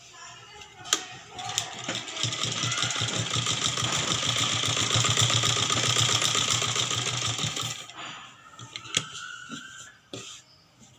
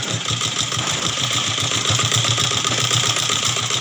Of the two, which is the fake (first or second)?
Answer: second